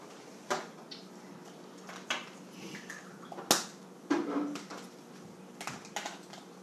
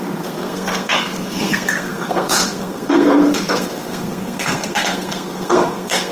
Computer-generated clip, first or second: second